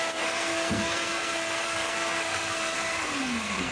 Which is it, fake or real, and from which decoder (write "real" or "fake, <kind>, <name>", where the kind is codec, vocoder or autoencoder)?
fake, codec, SNAC